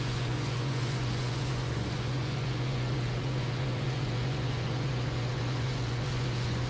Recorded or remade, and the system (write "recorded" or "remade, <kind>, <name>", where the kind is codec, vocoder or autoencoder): remade, vocoder, Vocos